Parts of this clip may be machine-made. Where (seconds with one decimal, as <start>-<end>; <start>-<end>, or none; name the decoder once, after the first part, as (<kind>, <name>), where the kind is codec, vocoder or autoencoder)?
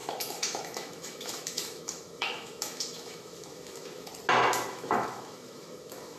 0.0-4.1 (autoencoder, DAC-VAE); 4.7-6.2